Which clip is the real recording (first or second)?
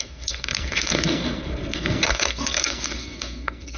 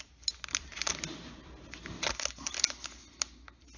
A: second